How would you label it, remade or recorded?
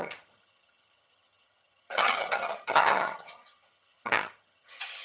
remade